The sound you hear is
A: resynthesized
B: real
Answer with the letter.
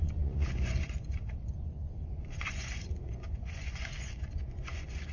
A